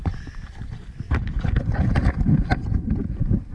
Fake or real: real